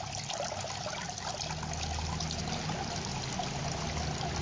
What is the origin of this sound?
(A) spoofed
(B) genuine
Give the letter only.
B